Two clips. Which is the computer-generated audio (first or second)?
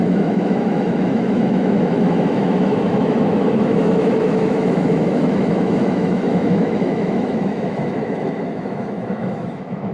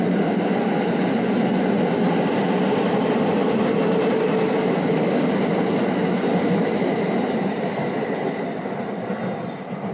first